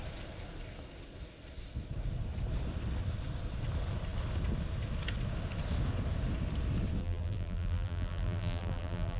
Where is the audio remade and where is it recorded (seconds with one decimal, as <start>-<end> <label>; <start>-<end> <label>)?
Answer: 0.0-7.0 recorded; 7.0-9.2 remade